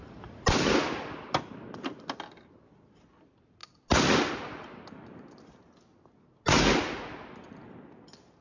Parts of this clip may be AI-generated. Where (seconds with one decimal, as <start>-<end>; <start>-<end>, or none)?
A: none